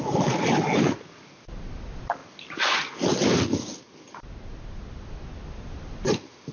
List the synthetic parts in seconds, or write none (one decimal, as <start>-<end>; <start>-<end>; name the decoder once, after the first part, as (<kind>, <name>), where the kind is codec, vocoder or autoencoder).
none